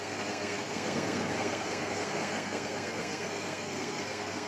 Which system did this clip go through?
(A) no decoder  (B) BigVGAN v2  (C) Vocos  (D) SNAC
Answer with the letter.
D